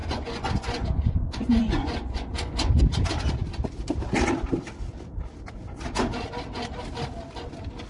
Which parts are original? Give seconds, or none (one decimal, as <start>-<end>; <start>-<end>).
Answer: 2.8-7.9